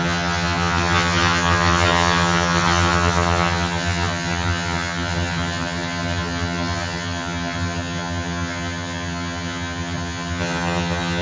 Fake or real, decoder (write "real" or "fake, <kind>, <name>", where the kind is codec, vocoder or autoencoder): fake, vocoder, HiFi-GAN